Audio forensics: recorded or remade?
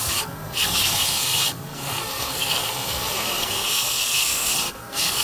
remade